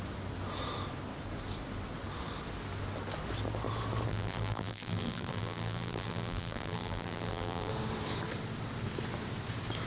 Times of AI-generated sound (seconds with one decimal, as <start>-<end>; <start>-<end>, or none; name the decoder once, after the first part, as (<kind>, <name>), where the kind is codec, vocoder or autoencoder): 4.1-7.7 (vocoder, BigVGAN v2)